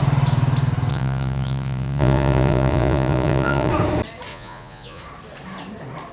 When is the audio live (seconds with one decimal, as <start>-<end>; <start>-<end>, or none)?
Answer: 0.0-0.9; 3.7-4.3; 5.0-6.1